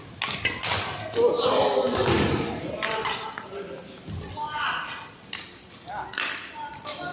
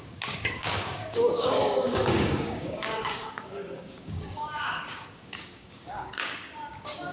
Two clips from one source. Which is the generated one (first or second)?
second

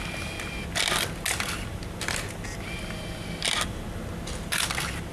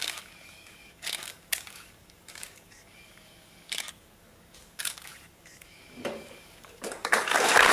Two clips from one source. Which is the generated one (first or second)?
second